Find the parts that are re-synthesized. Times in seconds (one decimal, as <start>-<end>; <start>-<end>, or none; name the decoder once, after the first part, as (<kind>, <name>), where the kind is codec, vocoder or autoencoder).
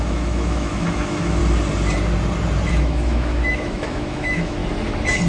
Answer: 0.0-1.4 (autoencoder, DAC-VAE); 2.7-4.6